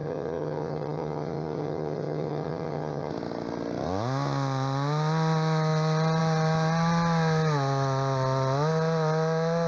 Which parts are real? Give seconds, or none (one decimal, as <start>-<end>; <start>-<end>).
3.1-9.7